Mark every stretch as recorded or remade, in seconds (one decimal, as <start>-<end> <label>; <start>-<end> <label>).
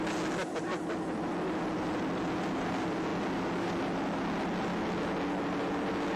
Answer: 0.0-6.2 recorded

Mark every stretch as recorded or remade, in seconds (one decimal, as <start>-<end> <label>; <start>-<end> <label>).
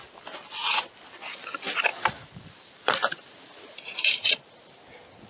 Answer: 0.0-1.9 recorded; 1.9-4.8 remade; 4.8-5.3 recorded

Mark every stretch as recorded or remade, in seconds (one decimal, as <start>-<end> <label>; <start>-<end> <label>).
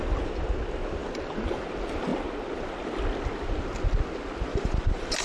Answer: 0.0-4.5 recorded; 4.5-5.2 remade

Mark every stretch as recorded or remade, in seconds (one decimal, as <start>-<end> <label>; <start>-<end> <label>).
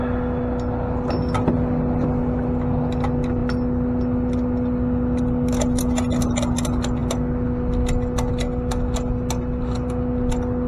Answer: 0.0-10.7 recorded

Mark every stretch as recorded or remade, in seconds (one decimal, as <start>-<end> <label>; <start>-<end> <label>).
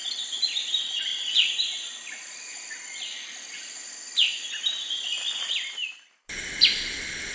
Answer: 0.0-1.1 remade; 1.1-2.5 recorded; 2.5-7.3 remade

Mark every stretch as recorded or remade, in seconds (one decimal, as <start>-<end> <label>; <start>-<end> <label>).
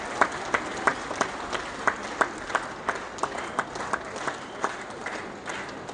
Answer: 0.0-4.3 recorded; 4.3-5.2 remade; 5.2-5.9 recorded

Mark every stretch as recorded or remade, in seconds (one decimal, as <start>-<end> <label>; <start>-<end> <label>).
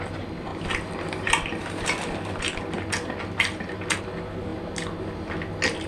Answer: 0.0-0.5 recorded; 0.5-4.0 remade; 4.0-5.9 recorded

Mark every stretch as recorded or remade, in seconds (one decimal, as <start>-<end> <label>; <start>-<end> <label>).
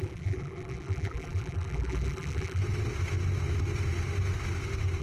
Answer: 0.0-2.6 remade; 2.6-5.0 recorded